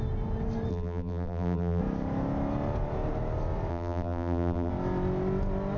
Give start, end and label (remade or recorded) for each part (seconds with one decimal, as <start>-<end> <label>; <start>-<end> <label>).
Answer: 0.0-0.7 recorded; 0.7-1.8 remade; 1.8-3.7 recorded; 3.7-4.7 remade; 4.7-5.8 recorded